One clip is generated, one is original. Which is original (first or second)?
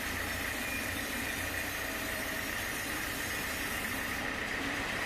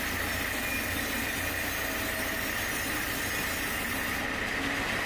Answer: second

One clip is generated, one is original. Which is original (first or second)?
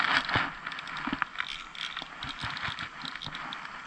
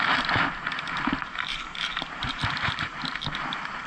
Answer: first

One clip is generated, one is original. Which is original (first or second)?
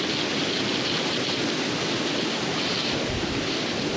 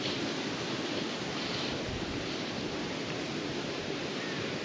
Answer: first